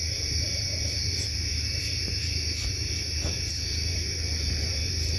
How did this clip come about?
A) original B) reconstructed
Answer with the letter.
B